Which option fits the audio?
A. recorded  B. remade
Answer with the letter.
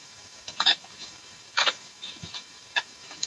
B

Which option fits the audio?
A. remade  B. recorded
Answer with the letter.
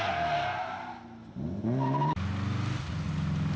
B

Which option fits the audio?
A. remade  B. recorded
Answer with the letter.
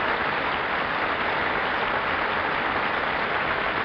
B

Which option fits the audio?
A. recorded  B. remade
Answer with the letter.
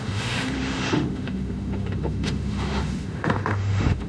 B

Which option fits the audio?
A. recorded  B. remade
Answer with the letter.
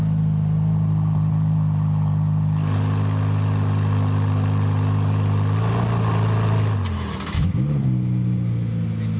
A